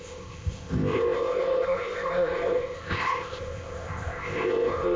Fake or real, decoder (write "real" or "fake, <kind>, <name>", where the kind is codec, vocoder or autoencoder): fake, codec, ZipCodec